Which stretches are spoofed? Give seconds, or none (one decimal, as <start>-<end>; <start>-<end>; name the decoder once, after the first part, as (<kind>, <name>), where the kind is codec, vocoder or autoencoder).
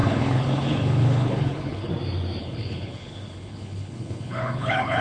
0.0-1.9 (codec, HILCodec); 2.4-5.0